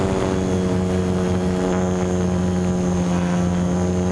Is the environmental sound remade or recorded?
recorded